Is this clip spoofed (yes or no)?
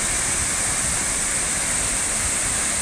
no